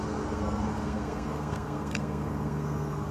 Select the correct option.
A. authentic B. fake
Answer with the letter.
B